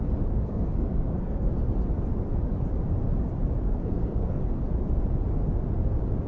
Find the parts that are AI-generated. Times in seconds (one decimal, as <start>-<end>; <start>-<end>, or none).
0.4-1.5; 3.6-4.4